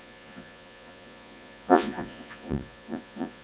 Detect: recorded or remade remade